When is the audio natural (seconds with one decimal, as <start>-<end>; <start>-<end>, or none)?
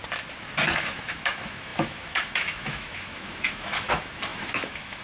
0.0-0.8